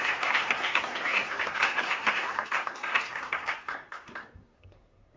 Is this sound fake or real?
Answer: fake